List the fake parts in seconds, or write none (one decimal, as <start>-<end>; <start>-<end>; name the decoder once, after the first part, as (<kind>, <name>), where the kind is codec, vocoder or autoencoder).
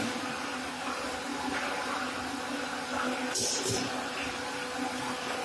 none